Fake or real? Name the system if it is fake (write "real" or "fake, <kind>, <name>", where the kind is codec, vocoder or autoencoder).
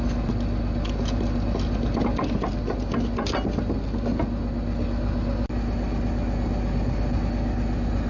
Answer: real